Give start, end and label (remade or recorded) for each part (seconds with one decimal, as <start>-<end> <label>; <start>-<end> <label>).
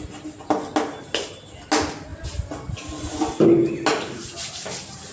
0.0-5.1 recorded